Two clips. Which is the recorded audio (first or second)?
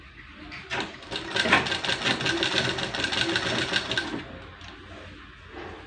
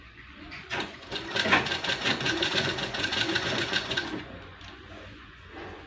first